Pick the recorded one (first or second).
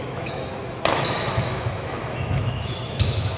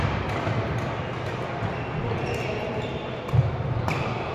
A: second